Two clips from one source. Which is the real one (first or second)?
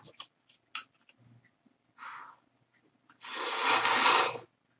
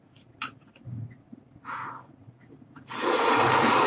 first